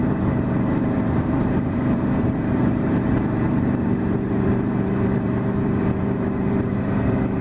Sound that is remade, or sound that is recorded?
remade